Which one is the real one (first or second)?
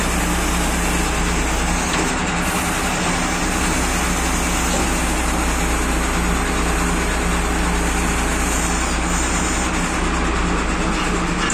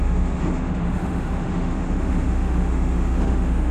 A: first